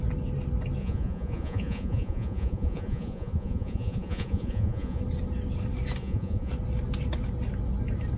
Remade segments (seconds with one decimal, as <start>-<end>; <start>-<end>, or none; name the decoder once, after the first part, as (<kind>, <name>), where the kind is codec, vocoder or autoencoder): 0.8-5.0 (vocoder, Vocos); 6.0-6.5